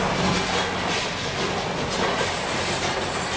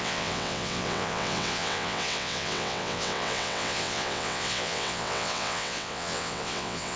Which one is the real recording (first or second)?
first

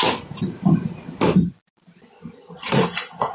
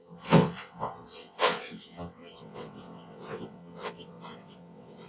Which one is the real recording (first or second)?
first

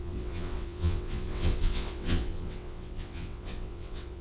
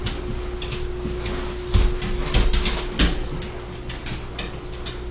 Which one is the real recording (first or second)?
second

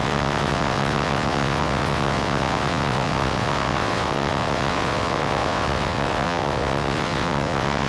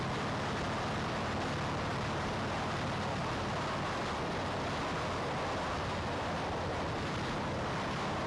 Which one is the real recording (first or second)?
second